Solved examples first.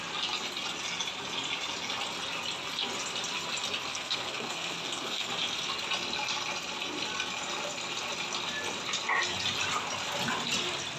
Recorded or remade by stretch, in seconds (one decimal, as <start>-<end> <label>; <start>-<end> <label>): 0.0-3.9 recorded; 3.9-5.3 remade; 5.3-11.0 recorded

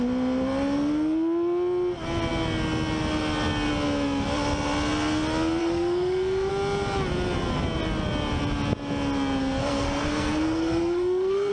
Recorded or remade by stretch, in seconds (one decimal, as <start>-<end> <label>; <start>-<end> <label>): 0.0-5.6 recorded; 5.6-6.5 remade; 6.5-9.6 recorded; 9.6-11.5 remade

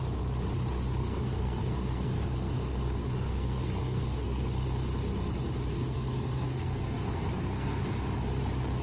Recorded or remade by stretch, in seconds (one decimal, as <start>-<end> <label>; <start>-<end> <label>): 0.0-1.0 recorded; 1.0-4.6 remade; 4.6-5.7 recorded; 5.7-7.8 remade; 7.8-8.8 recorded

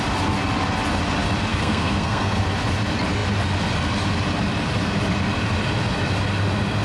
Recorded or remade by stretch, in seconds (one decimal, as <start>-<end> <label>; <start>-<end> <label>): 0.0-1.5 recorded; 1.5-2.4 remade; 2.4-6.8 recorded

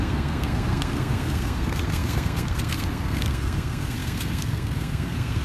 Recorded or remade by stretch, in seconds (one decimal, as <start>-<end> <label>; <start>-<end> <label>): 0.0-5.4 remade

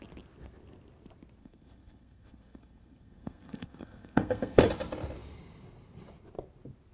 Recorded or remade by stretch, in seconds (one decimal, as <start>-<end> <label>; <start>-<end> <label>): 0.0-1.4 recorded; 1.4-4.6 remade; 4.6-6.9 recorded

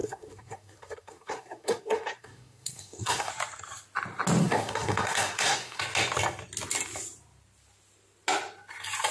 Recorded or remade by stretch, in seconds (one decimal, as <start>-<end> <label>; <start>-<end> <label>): 0.0-3.3 remade; 3.3-4.4 recorded; 4.4-5.8 remade; 5.8-9.1 recorded